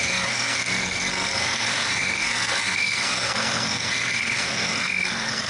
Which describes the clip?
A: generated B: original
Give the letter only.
A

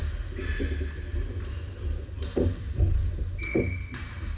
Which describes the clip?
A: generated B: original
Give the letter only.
B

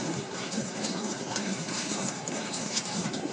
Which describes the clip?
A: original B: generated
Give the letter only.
B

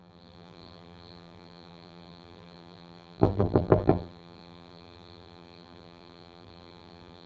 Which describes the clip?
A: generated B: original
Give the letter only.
A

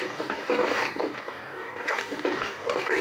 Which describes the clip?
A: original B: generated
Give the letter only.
B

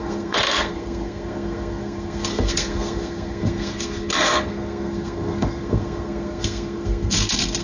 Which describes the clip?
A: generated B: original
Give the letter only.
A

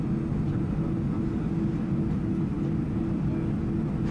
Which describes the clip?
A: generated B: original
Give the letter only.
B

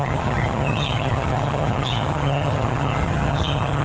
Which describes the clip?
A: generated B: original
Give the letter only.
A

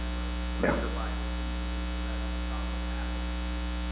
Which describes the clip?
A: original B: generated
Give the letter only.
A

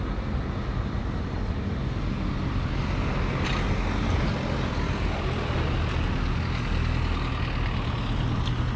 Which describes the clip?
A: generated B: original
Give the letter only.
B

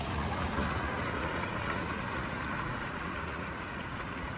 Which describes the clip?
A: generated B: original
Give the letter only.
A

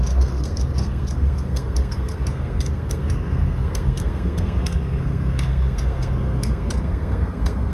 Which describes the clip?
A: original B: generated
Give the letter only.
B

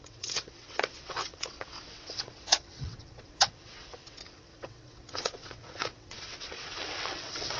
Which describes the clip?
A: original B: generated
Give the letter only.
B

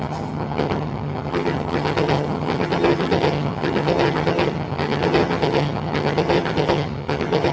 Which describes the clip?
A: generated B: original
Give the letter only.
A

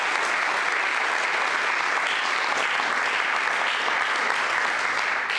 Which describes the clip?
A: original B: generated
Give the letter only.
A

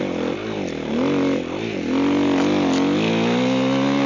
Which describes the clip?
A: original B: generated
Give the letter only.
A